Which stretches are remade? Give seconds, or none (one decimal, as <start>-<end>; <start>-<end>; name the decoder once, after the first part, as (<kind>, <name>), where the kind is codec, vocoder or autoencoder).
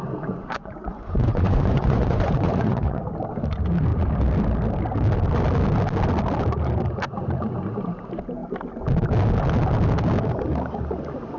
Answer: 0.0-3.0 (vocoder, Vocos)